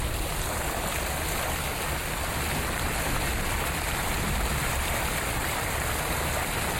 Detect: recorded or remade recorded